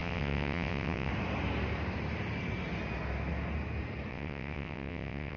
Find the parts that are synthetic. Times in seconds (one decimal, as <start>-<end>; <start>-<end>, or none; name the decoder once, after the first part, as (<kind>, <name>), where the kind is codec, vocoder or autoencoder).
0.0-1.1 (vocoder, WaveNeXt); 4.1-5.4